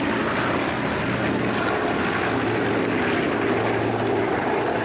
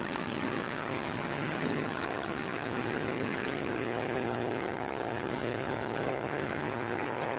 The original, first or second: first